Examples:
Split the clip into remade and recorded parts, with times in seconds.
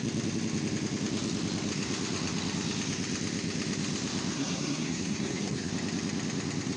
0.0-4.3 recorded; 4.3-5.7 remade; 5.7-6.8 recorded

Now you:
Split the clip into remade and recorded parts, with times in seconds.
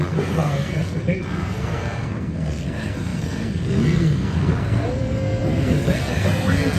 0.0-6.8 remade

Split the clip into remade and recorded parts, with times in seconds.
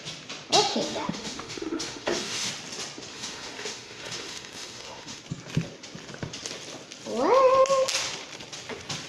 0.0-0.7 recorded; 0.7-2.5 remade; 2.5-3.1 recorded; 3.1-5.2 remade; 5.2-9.1 recorded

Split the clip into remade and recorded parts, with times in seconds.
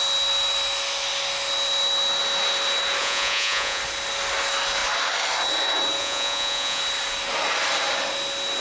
0.0-3.0 recorded; 3.0-3.8 remade; 3.8-6.0 recorded; 6.0-6.8 remade; 6.8-8.6 recorded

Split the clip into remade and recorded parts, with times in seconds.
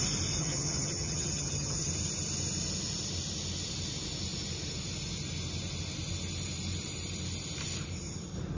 0.0-0.4 recorded; 0.4-1.9 remade; 1.9-8.6 recorded